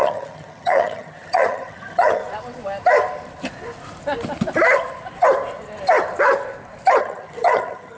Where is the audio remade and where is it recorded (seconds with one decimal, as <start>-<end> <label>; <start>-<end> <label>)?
0.0-2.2 remade; 2.2-7.0 recorded; 7.0-8.0 remade